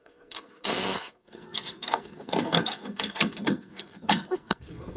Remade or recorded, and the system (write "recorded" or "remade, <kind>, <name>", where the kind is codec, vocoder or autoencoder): remade, codec, SNAC